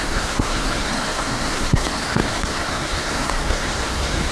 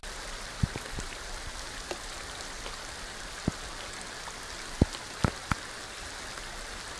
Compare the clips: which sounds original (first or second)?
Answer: second